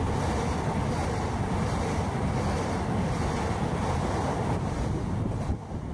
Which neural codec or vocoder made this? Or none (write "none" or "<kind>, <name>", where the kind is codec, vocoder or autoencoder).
none